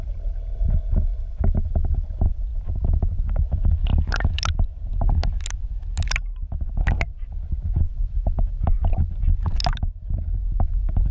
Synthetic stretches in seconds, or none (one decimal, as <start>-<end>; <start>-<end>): none